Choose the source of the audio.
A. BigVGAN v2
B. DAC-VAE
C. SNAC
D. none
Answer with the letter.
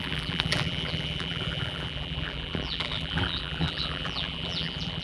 A